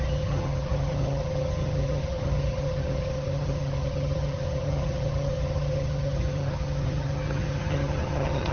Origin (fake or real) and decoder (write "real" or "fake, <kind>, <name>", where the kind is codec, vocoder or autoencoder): fake, vocoder, HiFi-GAN